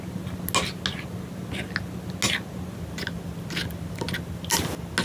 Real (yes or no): yes